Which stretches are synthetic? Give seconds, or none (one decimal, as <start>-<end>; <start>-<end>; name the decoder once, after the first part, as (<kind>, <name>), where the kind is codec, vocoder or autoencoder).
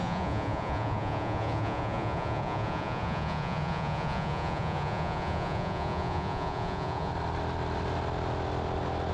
0.0-7.1 (vocoder, Vocos)